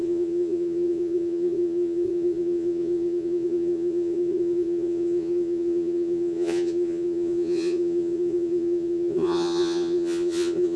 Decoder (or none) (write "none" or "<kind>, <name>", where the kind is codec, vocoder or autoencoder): vocoder, Vocos